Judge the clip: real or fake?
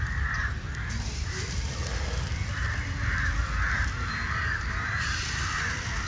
fake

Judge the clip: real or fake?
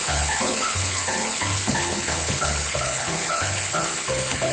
fake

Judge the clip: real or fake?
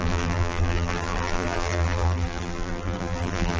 fake